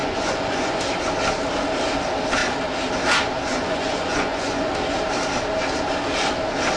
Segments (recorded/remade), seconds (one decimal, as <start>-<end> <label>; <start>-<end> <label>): 0.0-0.8 remade; 0.8-3.5 recorded; 3.5-4.7 remade; 4.7-6.8 recorded